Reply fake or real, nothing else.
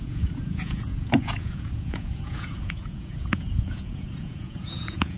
fake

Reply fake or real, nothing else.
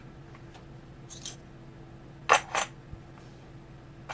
real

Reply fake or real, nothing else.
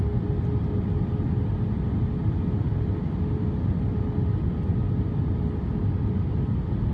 real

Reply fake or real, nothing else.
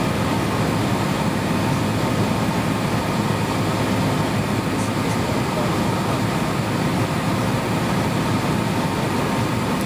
real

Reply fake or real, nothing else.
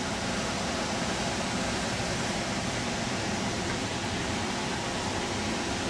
real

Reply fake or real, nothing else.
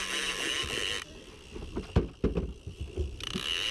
real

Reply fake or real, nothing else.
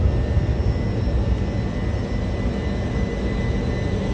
real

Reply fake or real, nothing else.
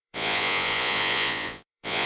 fake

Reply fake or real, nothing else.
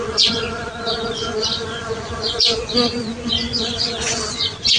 fake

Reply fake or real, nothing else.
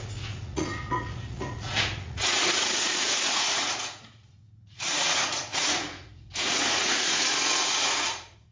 fake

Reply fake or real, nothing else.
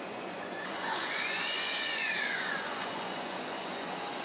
fake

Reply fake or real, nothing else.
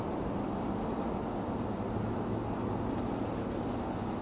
real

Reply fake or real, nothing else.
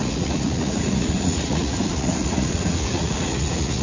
fake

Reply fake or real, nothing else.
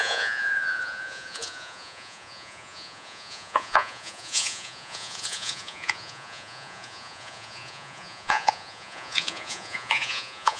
fake